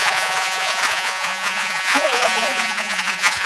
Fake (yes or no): yes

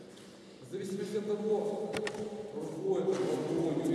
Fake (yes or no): no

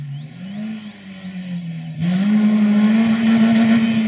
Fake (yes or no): no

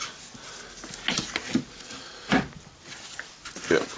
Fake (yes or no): no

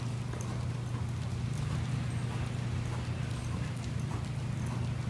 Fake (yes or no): no